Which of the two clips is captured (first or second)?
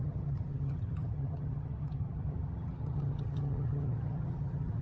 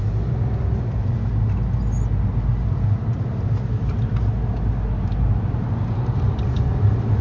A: second